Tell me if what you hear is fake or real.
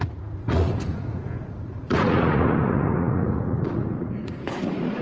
fake